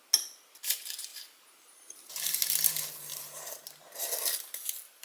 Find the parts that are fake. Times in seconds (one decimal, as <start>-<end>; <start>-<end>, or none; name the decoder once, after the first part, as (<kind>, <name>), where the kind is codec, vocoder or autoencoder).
1.1-2.1 (vocoder, BigVGAN v2); 3.1-3.7

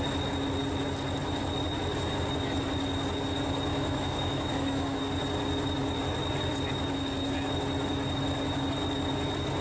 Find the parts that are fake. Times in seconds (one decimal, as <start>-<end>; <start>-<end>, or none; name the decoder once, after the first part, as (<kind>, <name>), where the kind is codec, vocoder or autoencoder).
3.7-5.0 (autoencoder, DAC-VAE)

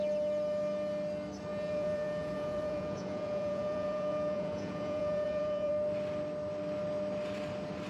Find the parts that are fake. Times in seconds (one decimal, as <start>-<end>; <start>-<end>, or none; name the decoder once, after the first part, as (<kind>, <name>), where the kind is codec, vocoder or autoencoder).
1.5-5.7 (vocoder, Vocos)

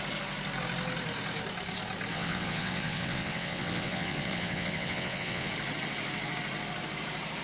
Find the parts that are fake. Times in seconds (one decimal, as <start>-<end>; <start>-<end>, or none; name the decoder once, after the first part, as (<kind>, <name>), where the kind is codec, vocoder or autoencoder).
2.1-5.5 (vocoder, WaveNeXt)

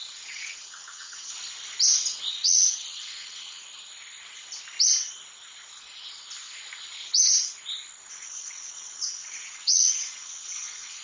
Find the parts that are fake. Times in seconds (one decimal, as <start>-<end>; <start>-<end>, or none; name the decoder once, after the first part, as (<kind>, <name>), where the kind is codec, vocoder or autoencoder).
0.0-1.3 (vocoder, WaveNeXt); 2.3-3.6; 8.1-11.0

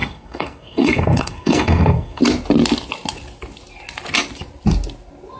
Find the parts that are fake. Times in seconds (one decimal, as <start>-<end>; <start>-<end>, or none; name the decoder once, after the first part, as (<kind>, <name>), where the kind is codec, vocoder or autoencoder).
0.0-2.2 (codec, SNAC)

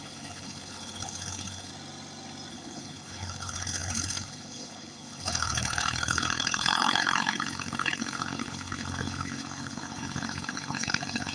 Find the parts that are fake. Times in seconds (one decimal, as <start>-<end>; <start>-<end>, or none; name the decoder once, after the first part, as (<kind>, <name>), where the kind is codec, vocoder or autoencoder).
0.0-1.7 (codec, HILCodec); 2.5-11.3

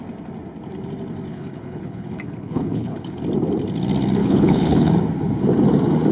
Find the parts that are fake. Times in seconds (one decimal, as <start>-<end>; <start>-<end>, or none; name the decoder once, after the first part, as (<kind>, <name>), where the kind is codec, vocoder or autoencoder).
1.3-3.2 (codec, HILCodec); 4.2-4.9